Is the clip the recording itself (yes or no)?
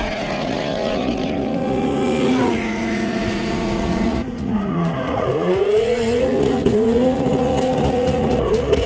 no